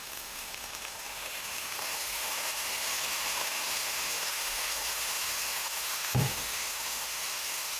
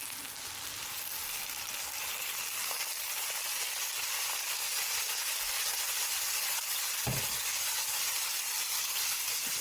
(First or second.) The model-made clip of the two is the first